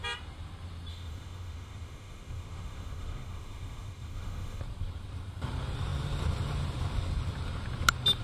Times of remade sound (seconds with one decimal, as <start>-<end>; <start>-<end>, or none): 0.9-4.6